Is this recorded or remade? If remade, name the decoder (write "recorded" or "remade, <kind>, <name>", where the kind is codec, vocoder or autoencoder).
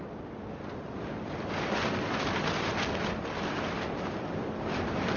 recorded